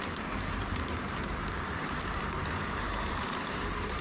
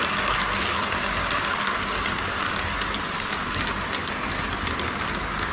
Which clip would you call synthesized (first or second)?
first